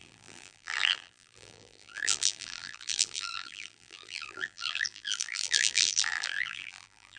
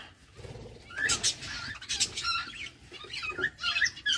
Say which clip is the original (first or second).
second